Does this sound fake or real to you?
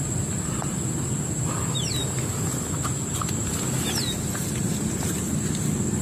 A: real